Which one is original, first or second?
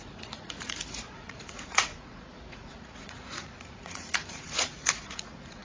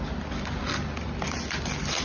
second